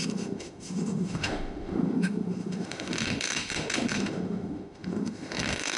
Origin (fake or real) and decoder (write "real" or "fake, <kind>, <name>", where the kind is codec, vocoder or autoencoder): fake, autoencoder, DAC-VAE